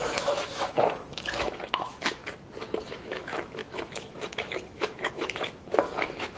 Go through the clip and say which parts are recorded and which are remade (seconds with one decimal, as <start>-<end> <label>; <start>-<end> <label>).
0.0-2.2 remade; 2.2-2.8 recorded; 2.8-6.4 remade